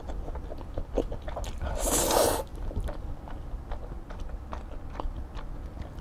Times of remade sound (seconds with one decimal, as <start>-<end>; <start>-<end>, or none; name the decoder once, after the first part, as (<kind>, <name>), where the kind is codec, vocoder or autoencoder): none